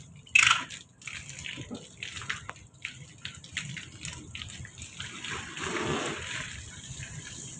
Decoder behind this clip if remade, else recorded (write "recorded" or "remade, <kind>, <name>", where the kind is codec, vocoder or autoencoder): recorded